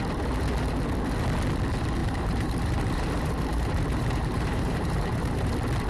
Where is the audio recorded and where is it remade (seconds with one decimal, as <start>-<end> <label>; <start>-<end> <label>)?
0.0-2.0 recorded; 2.0-5.5 remade; 5.5-5.9 recorded

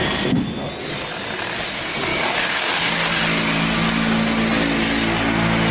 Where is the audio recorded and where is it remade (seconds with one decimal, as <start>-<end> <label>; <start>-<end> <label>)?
0.0-2.1 recorded; 2.1-2.7 remade; 2.7-5.7 recorded